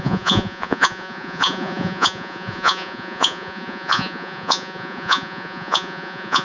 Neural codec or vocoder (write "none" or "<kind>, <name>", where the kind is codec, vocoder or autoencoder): vocoder, Vocos